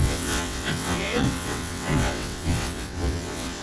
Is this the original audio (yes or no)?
no